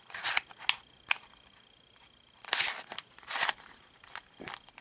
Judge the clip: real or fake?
real